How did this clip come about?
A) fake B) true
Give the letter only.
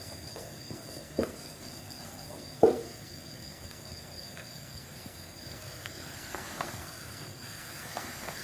A